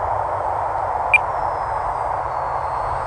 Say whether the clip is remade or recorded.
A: recorded